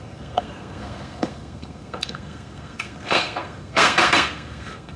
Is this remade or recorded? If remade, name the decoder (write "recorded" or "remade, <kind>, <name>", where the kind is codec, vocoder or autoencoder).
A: remade, codec, SNAC